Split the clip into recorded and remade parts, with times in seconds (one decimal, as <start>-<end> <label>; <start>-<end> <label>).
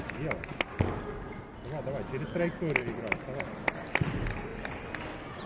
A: 0.0-5.5 recorded